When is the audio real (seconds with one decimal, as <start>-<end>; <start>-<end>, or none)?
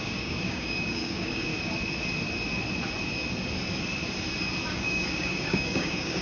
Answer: 1.5-4.7